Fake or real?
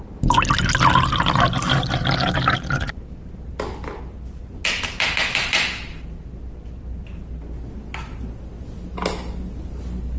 real